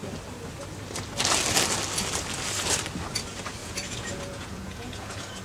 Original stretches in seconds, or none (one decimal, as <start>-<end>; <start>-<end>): 0.0-3.6